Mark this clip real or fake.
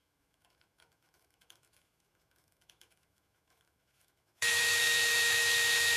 fake